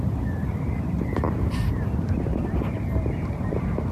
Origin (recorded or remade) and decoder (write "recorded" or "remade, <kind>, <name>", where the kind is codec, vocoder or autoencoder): recorded